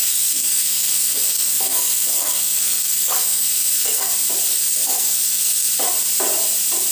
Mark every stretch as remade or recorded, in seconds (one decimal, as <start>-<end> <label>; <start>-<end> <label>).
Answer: 0.0-4.1 remade; 4.1-4.5 recorded; 4.5-5.7 remade; 5.7-6.9 recorded